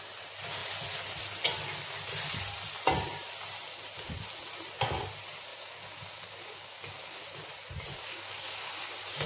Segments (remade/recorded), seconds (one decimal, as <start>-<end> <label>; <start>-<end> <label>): 0.0-5.5 recorded; 5.5-7.2 remade; 7.2-7.9 recorded; 7.9-8.7 remade; 8.7-9.3 recorded